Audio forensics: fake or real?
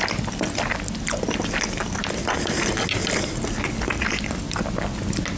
real